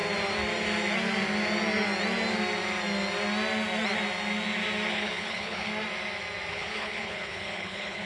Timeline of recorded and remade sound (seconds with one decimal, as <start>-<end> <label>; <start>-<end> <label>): 0.0-4.9 recorded; 4.9-5.7 remade; 5.7-6.5 recorded; 6.5-8.1 remade